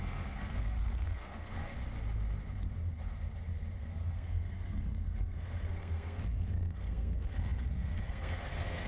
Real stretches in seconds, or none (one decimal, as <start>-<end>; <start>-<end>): 1.7-3.8

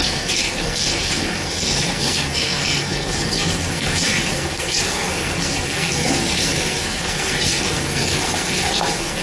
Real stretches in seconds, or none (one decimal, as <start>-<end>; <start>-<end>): none

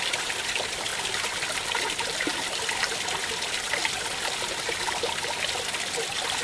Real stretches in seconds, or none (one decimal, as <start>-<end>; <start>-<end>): 0.0-6.4

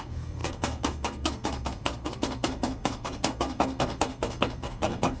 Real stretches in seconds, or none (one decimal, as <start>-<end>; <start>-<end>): none